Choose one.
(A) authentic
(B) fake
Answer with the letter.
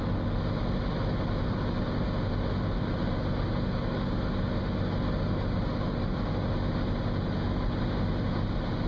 A